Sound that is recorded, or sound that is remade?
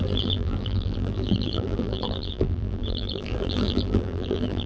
remade